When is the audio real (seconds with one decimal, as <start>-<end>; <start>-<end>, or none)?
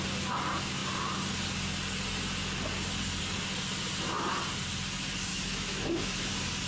0.0-5.3; 6.3-6.7